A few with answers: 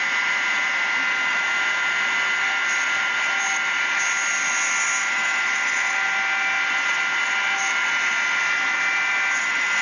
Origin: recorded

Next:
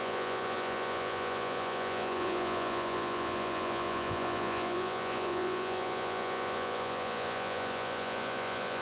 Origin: remade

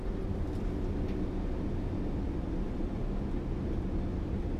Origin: recorded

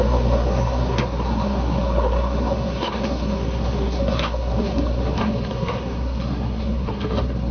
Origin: remade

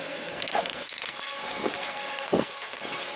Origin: remade